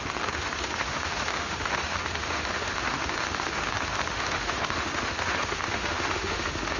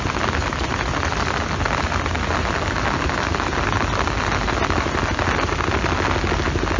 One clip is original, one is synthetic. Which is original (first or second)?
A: second